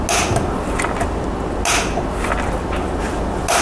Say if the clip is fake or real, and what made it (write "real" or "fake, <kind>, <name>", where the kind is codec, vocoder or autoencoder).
real